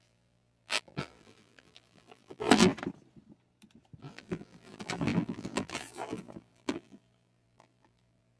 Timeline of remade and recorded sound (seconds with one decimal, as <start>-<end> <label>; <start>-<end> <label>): 0.0-2.7 remade; 2.7-4.0 recorded; 4.0-8.4 remade